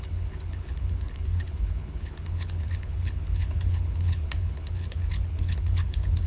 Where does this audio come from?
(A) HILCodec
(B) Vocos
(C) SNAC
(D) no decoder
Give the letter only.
A